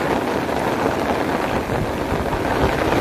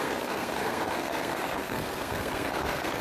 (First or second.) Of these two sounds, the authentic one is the first